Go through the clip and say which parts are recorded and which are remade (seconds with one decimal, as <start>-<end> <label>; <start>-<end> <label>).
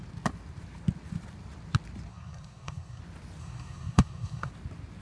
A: 0.0-2.1 recorded; 2.1-3.0 remade; 3.0-3.4 recorded; 3.4-4.5 remade; 4.5-5.0 recorded